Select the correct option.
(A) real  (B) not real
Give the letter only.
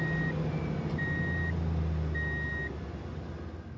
A